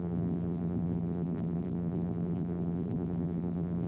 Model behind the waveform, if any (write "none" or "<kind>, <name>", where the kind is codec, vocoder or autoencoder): vocoder, BigVGAN v2